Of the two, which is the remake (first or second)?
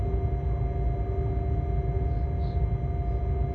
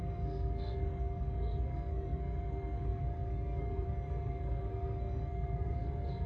second